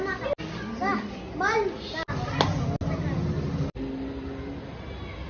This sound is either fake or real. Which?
real